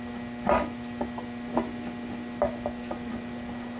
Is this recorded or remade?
recorded